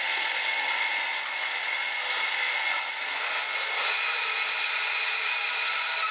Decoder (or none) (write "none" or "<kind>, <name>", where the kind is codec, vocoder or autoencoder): none